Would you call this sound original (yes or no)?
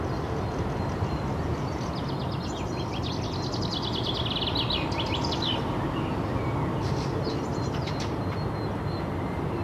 yes